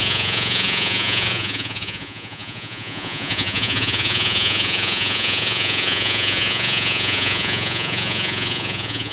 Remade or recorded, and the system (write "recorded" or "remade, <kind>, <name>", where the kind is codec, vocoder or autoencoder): remade, vocoder, Vocos